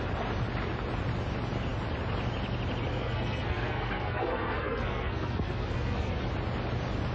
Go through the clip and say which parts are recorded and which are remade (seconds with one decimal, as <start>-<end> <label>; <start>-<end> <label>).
0.0-2.9 recorded; 2.9-6.2 remade; 6.2-7.1 recorded